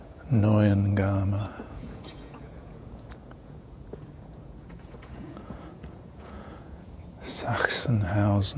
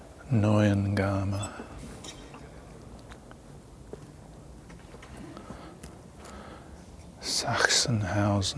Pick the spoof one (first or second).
first